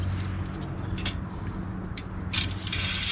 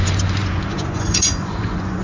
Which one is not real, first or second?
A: second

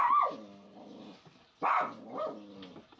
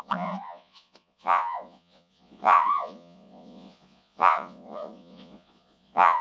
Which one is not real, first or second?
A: second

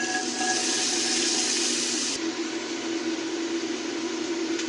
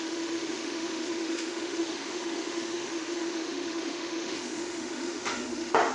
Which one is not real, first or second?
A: second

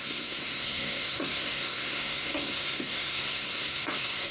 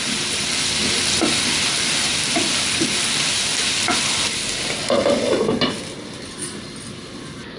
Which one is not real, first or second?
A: first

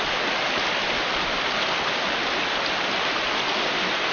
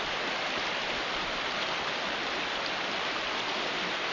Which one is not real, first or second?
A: second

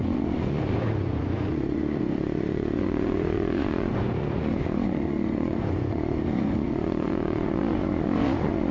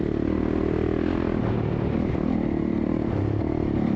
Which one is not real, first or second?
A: first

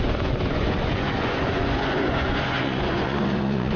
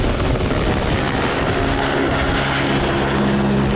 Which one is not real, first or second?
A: first